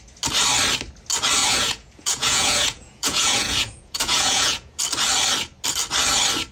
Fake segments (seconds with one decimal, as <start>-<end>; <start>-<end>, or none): 1.4-4.8